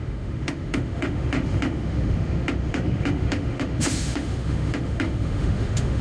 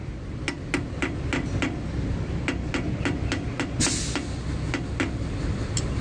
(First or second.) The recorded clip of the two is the second